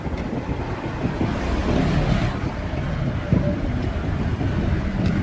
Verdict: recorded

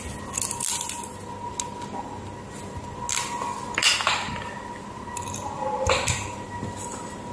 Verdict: recorded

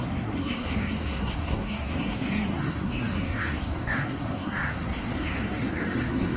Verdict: remade